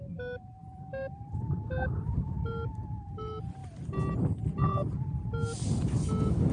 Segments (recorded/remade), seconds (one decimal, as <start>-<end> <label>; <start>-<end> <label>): 0.0-6.5 recorded